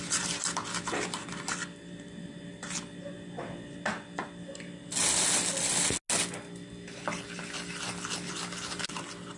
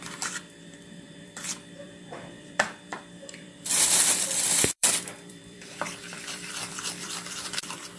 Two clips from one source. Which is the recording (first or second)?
first